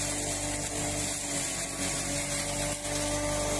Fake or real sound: real